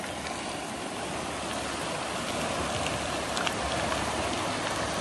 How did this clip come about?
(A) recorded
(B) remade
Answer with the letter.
A